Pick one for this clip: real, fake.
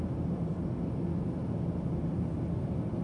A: real